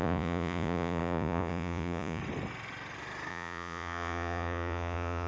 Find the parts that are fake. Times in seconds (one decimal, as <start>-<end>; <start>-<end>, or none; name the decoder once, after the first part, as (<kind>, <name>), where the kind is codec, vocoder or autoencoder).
0.0-2.2 (vocoder, Vocos); 3.3-5.3